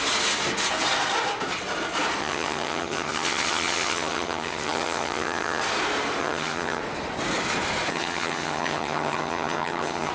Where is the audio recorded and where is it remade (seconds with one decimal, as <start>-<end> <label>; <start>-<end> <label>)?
0.0-2.2 recorded; 2.2-5.6 remade; 5.6-6.2 recorded; 6.2-6.8 remade; 6.8-7.9 recorded; 7.9-10.1 remade